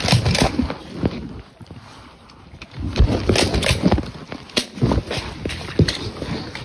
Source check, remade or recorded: recorded